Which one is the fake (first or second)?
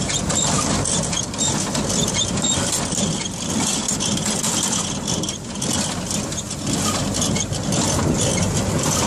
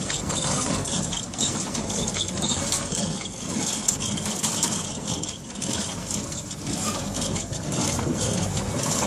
second